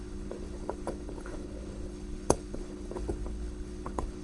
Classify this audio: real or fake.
fake